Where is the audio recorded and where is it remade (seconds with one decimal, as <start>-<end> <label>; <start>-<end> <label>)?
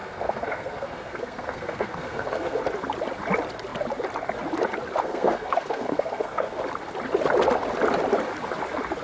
0.0-2.6 remade; 2.6-5.0 recorded; 5.0-6.6 remade; 6.6-9.0 recorded